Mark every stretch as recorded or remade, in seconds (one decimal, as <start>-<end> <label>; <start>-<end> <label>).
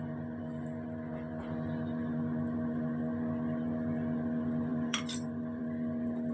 0.0-4.7 recorded; 4.7-5.6 remade; 5.6-6.3 recorded